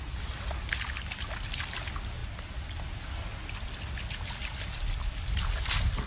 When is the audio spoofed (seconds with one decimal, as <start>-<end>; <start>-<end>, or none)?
none